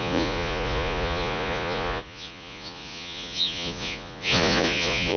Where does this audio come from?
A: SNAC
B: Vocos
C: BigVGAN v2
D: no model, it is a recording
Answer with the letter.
B